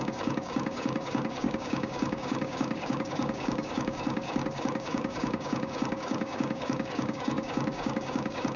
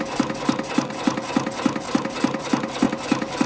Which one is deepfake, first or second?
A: first